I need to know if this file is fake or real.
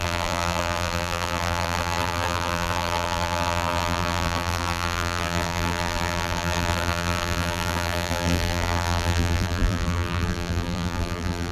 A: fake